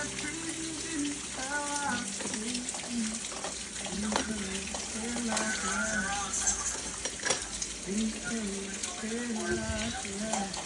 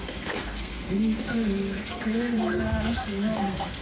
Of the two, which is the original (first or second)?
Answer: first